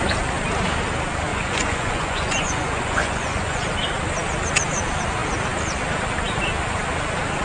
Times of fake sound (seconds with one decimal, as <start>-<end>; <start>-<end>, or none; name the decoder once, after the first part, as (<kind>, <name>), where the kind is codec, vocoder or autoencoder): 1.3-3.7 (vocoder, Vocos)